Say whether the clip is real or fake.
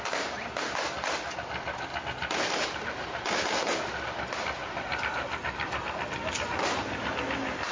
real